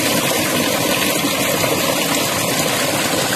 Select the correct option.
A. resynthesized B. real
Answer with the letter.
B